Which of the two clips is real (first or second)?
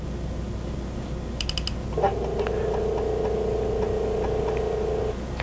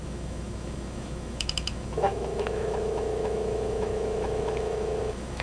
first